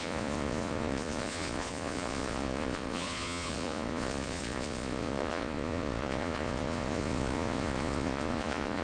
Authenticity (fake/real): fake